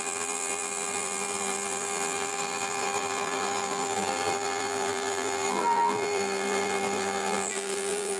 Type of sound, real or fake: fake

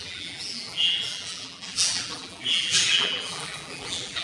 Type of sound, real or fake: fake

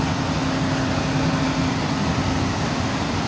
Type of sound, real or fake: real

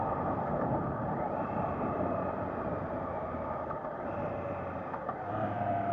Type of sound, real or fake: fake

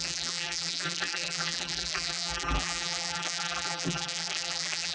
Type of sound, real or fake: fake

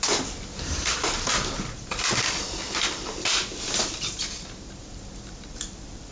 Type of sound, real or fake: fake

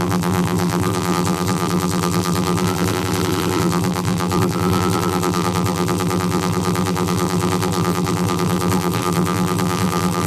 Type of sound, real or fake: fake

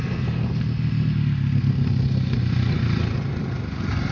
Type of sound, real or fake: real